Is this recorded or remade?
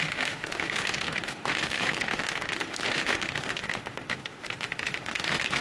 remade